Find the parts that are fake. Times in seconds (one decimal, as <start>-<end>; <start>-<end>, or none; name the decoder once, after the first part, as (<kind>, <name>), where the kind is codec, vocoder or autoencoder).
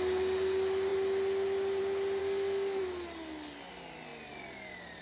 2.2-2.8 (codec, SNAC)